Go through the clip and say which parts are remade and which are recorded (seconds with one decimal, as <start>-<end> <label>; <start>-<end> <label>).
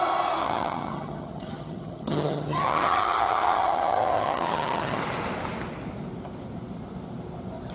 0.0-0.4 recorded; 0.4-5.0 remade; 5.0-7.7 recorded